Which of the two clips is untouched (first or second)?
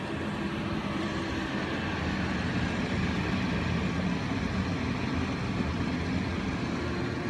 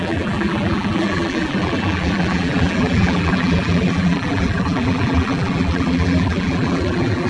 first